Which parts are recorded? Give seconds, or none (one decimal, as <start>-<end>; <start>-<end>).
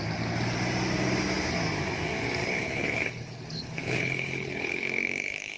0.0-2.4